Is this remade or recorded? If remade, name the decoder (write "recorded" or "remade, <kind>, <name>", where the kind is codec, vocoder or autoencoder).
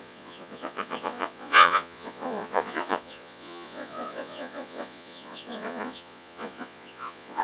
remade, vocoder, Vocos